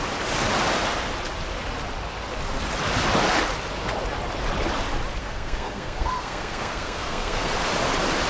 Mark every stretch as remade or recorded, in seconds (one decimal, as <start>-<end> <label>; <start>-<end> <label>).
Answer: 0.0-5.2 recorded; 5.2-7.5 remade; 7.5-8.3 recorded